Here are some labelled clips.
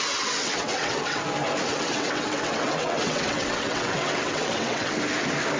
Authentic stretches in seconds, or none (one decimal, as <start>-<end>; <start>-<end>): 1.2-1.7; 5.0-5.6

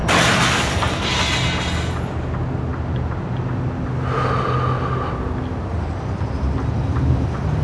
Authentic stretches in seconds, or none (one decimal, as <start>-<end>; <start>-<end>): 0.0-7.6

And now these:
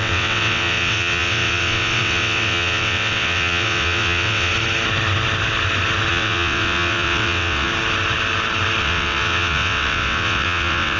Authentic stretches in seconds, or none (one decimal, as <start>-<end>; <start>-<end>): 4.5-6.1; 7.7-8.8

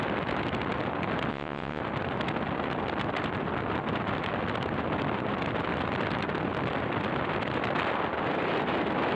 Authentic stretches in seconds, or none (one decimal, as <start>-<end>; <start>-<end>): 0.0-1.3; 1.8-9.2

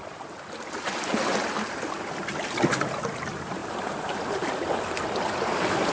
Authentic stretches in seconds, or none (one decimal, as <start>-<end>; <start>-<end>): 0.0-5.9

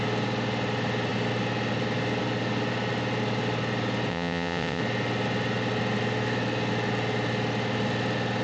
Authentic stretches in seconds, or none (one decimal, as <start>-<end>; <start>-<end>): 0.0-4.1; 4.8-8.4

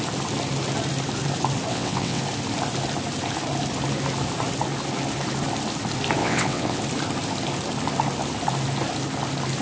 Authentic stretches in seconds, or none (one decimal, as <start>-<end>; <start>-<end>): 0.0-1.7; 2.2-6.2; 6.8-9.6